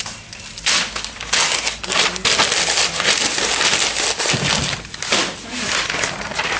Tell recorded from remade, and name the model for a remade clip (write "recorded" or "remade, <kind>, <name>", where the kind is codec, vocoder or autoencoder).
recorded